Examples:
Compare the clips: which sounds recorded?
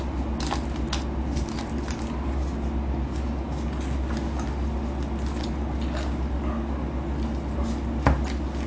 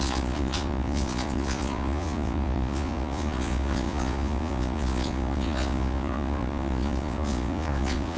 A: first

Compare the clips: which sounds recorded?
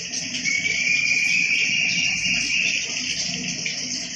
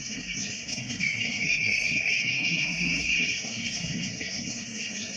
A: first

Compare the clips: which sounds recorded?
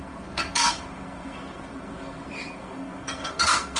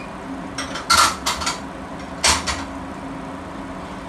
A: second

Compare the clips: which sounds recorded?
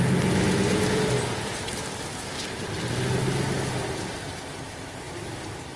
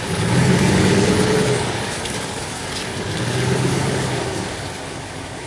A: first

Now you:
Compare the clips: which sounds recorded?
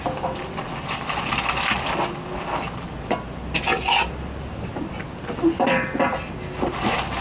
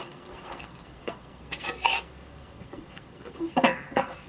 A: first